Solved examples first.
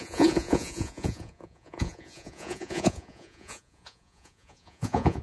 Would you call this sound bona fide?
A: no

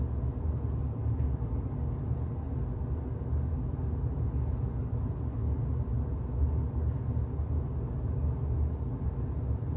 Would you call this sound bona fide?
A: yes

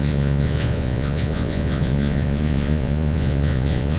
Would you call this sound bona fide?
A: no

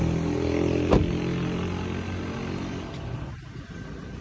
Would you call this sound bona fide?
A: yes